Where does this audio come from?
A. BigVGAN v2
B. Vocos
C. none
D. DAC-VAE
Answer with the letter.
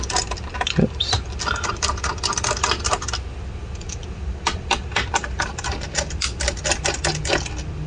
C